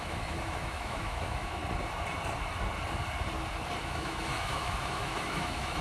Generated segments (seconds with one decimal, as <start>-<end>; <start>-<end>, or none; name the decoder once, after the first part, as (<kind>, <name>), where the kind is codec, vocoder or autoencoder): 0.0-1.6 (autoencoder, DAC-VAE); 3.8-5.8